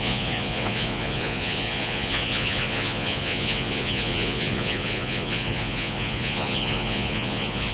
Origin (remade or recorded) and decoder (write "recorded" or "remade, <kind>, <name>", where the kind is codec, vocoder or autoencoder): remade, vocoder, Vocos